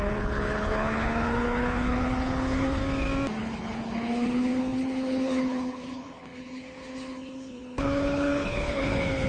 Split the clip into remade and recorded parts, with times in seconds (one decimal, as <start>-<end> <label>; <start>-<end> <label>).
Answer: 0.0-2.8 remade; 2.8-3.4 recorded; 3.4-9.3 remade